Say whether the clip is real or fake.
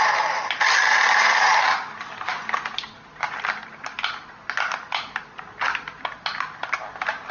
real